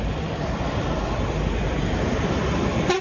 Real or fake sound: fake